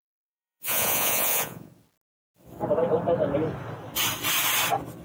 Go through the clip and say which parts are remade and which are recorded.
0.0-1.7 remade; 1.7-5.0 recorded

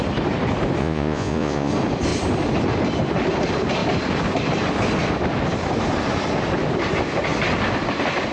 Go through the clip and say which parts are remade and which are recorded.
0.0-0.8 recorded; 0.8-1.7 remade; 1.7-8.3 recorded

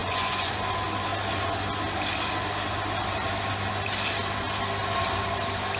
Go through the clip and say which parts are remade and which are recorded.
0.0-0.5 remade; 0.5-5.8 recorded

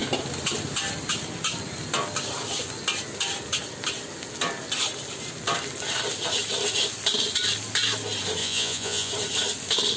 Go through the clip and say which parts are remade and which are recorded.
0.0-8.4 recorded; 8.4-9.1 remade; 9.1-10.0 recorded

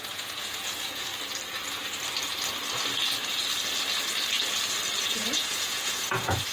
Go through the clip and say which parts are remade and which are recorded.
0.0-1.1 remade; 1.1-5.0 recorded; 5.0-6.5 remade

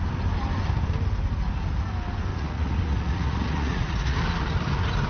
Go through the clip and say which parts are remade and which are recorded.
0.0-2.3 recorded; 2.3-4.2 remade; 4.2-5.1 recorded